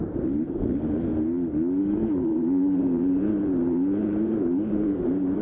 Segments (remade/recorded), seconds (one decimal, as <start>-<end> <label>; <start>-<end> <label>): 0.0-1.1 remade; 1.1-1.8 recorded; 1.8-5.4 remade